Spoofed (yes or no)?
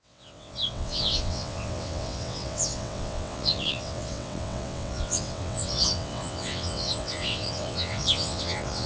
yes